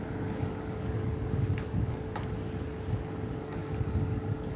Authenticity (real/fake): fake